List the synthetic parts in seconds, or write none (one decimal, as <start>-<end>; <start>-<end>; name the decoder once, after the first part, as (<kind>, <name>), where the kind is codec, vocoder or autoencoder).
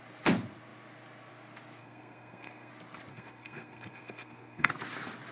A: 1.8-2.7 (codec, SNAC); 3.1-4.7